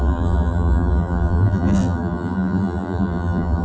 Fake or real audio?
fake